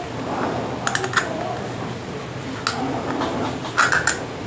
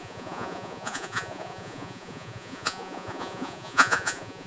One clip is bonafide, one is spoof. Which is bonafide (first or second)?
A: first